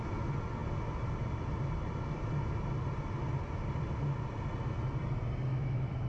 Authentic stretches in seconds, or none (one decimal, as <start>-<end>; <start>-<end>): 0.0-5.5